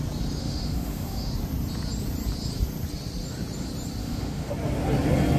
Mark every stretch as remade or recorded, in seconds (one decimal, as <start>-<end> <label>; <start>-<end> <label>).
0.0-0.4 recorded; 0.4-1.3 remade; 1.3-4.0 recorded; 4.0-4.5 remade; 4.5-5.4 recorded